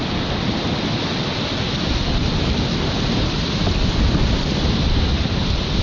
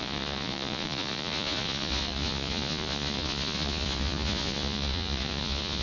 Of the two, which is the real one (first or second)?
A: first